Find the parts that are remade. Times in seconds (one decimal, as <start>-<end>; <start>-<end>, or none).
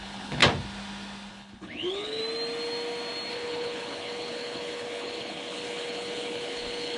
0.0-0.4; 1.3-2.2; 3.3-7.0